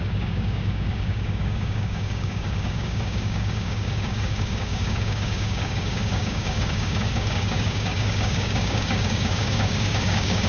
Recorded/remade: remade